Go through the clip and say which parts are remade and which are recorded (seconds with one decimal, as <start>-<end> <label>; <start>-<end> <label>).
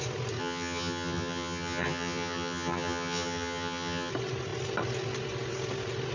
0.0-0.4 recorded; 0.4-4.1 remade; 4.1-6.1 recorded